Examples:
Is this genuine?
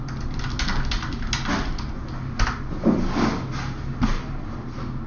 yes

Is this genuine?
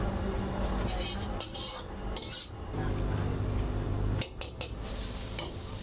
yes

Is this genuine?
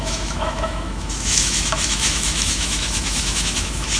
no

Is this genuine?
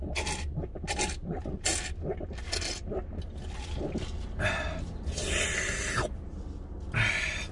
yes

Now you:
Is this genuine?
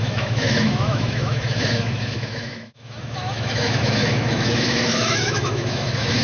no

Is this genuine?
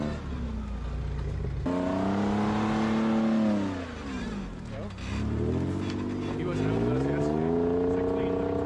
yes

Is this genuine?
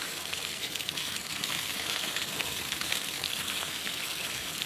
no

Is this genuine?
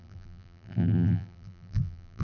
no